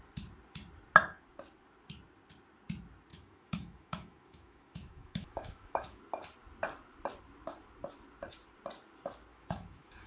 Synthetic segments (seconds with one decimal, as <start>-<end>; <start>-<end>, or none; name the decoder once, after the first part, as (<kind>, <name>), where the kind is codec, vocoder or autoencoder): 3.1-6.0 (autoencoder, DAC-VAE); 9.3-10.1